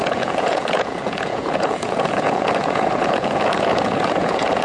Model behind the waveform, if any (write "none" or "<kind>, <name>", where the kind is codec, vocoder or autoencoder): vocoder, Vocos